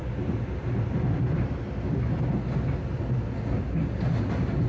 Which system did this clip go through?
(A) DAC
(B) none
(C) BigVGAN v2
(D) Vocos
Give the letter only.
B